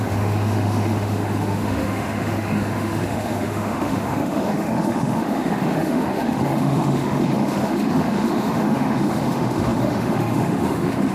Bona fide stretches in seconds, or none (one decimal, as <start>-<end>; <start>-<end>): none